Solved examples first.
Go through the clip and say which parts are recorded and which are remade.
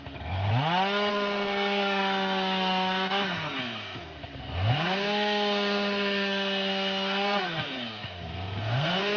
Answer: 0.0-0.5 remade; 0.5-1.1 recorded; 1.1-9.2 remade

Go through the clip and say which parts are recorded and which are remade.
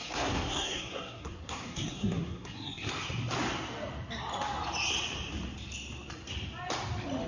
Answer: 0.0-2.9 remade; 2.9-7.3 recorded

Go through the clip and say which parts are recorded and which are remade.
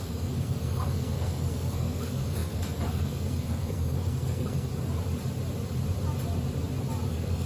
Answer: 0.0-4.7 remade; 4.7-7.1 recorded; 7.1-7.5 remade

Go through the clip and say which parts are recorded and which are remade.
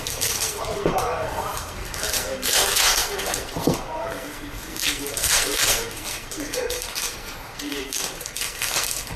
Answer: 0.0-9.2 remade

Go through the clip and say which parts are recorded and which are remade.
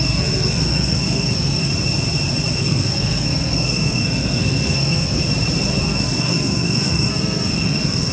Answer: 0.0-1.6 remade; 1.6-2.6 recorded; 2.6-5.2 remade; 5.2-5.8 recorded; 5.8-8.1 remade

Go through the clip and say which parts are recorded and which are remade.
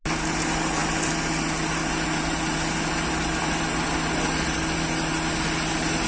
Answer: 0.0-6.1 recorded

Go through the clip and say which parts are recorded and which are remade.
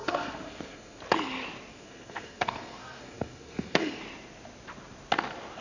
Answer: 0.0-1.0 remade; 1.0-1.7 recorded; 1.7-4.0 remade; 4.0-5.6 recorded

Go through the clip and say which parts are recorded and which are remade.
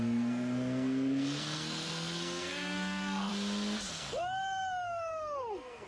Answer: 0.0-3.3 remade; 3.3-3.9 recorded; 3.9-5.9 remade